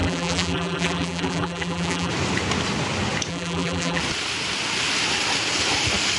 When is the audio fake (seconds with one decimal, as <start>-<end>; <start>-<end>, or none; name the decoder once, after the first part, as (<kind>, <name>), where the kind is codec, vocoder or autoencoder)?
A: 0.0-2.1 (vocoder, BigVGAN v2); 3.3-4.0